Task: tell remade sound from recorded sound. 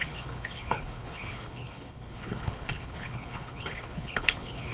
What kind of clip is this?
remade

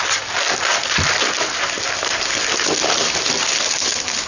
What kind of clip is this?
recorded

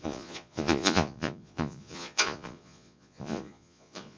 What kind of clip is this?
remade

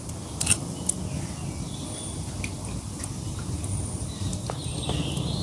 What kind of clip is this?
recorded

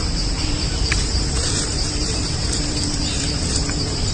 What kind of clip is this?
remade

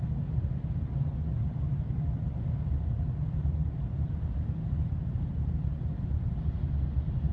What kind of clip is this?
recorded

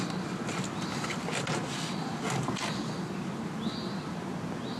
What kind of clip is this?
recorded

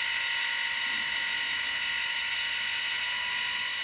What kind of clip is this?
recorded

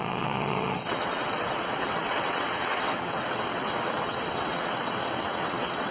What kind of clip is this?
remade